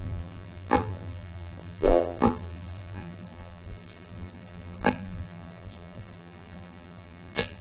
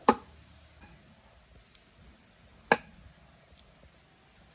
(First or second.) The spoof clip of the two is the first